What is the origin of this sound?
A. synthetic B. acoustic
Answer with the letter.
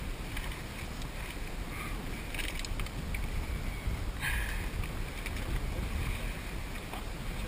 B